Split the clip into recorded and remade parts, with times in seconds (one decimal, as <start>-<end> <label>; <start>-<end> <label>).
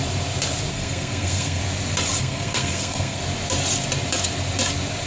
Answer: 0.0-0.7 recorded; 0.7-1.6 remade; 1.6-2.2 recorded; 2.2-3.2 remade; 3.2-5.1 recorded